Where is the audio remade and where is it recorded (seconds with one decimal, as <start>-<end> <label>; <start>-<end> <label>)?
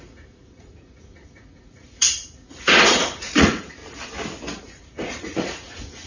0.0-3.8 remade; 3.8-4.6 recorded; 4.6-6.1 remade